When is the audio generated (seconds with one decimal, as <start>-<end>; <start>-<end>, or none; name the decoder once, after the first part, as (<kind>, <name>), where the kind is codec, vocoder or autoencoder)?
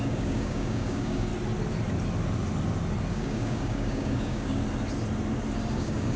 0.0-1.3 (codec, DAC); 3.1-4.6; 5.7-6.2